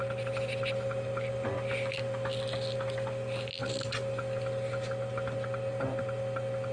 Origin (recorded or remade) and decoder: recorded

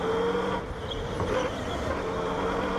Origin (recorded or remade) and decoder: recorded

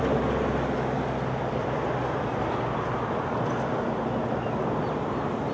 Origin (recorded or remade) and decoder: recorded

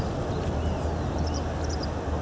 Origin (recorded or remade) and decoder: recorded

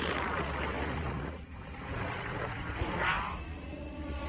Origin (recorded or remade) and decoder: remade, vocoder, Vocos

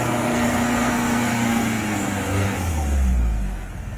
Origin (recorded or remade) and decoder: remade, codec, SNAC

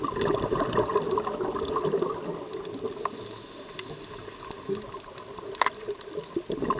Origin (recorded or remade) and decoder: recorded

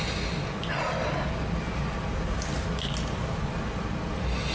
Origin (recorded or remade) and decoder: recorded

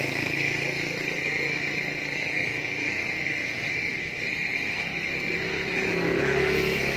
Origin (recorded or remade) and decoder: remade, codec, SNAC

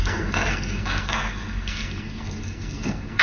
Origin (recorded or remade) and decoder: remade, codec, SNAC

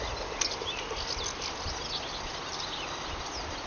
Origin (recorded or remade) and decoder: recorded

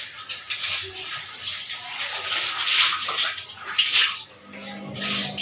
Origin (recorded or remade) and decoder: recorded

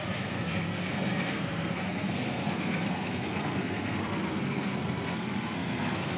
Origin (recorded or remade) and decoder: remade, codec, SNAC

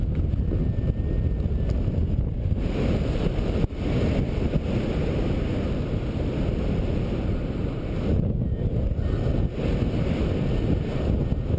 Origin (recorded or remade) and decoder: recorded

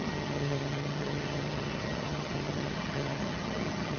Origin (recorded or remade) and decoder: remade, vocoder, HiFi-GAN